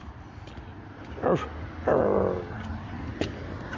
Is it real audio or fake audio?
real